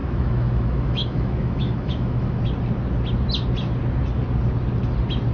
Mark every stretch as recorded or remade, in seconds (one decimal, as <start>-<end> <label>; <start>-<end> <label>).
0.0-2.4 remade; 2.4-5.3 recorded